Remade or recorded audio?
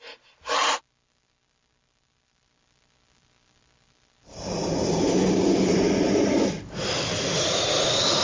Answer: recorded